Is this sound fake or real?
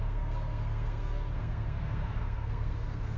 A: fake